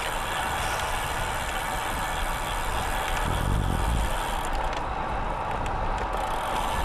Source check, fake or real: real